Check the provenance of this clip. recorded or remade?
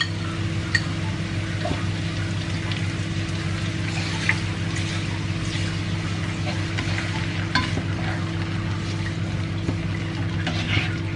recorded